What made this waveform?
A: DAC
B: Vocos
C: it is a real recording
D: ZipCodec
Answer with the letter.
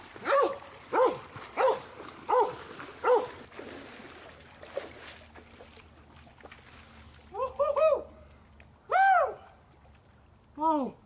C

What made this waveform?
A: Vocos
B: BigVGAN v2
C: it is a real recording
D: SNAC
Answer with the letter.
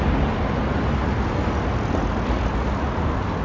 C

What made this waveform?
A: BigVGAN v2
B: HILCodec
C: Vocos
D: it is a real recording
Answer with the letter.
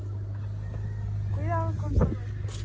D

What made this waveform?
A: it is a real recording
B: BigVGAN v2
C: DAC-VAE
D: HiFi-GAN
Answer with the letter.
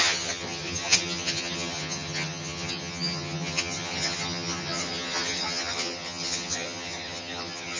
D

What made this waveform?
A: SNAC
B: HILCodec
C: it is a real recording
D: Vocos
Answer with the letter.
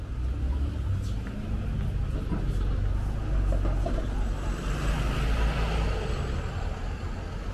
C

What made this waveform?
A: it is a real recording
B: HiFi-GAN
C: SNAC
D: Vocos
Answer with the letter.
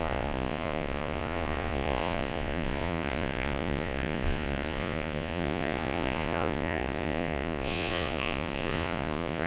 D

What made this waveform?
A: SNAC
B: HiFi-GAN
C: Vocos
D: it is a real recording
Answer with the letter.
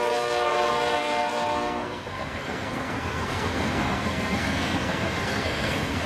A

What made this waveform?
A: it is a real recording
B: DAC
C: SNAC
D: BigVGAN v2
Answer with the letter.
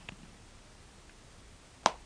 A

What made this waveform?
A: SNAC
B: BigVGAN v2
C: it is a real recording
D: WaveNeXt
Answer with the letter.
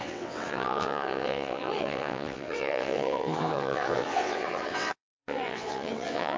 D